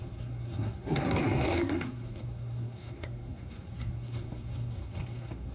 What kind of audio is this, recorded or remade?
remade